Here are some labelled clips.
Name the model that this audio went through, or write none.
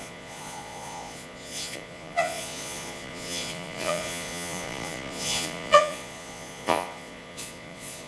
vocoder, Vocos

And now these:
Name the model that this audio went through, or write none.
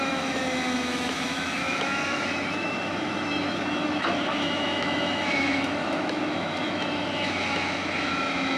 autoencoder, DAC-VAE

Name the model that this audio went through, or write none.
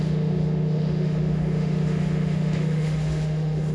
autoencoder, DAC-VAE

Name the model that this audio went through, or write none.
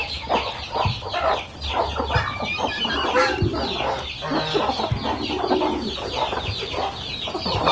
none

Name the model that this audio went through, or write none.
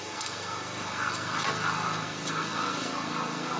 codec, SNAC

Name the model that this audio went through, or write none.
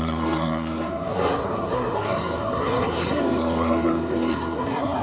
codec, SNAC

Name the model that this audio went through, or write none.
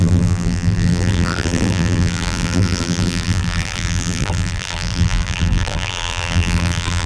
vocoder, BigVGAN v2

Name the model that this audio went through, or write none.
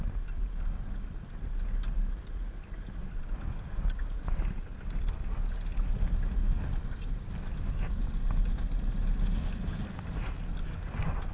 none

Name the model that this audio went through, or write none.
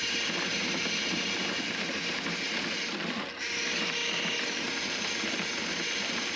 none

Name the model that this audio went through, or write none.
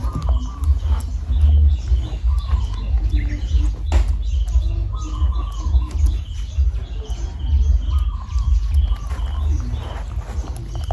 none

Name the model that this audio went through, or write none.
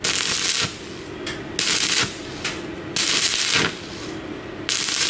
none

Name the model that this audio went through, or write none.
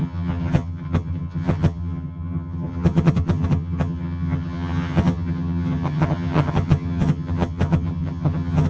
vocoder, HiFi-GAN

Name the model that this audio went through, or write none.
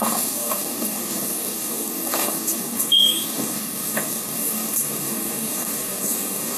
codec, DAC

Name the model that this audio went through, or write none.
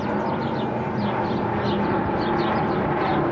none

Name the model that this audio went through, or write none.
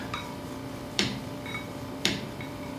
vocoder, BigVGAN v2